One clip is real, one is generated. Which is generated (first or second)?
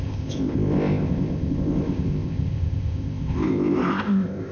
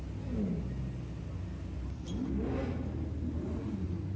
first